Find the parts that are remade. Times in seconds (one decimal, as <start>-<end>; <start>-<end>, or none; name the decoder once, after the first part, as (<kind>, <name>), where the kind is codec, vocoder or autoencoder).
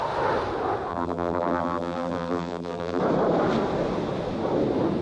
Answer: 0.9-3.0 (vocoder, BigVGAN v2)